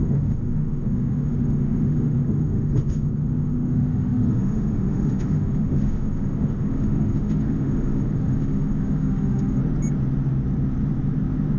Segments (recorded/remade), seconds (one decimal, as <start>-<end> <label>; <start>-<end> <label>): 0.0-9.6 remade; 9.6-11.6 recorded